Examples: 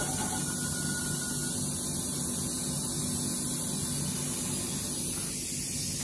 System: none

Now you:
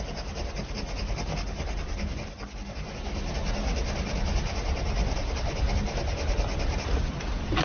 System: none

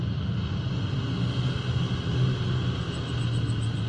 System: none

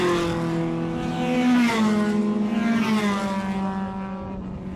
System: none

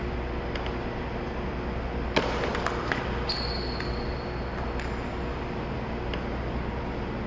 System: none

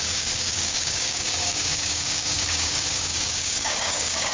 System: codec, DAC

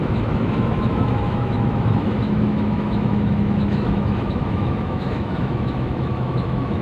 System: autoencoder, DAC-VAE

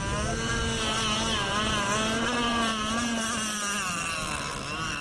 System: none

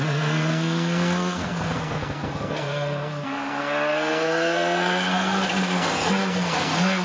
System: codec, SNAC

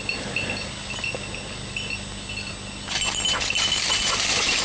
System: none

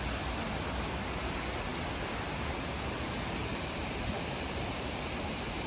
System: none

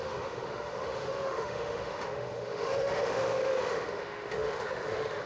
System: autoencoder, DAC-VAE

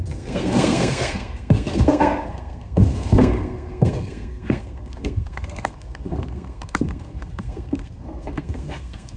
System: codec, SNAC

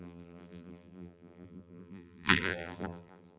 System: vocoder, BigVGAN v2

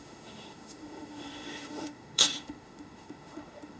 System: autoencoder, DAC-VAE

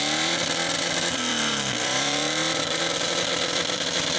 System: vocoder, BigVGAN v2